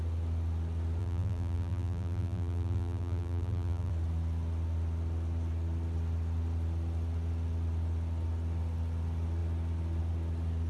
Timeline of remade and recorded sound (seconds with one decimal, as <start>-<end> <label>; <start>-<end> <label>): 0.0-1.0 recorded; 1.0-3.9 remade; 3.9-10.7 recorded